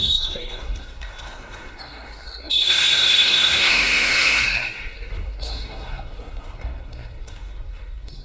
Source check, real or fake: fake